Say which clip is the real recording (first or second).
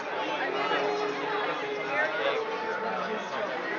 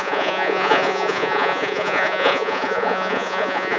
first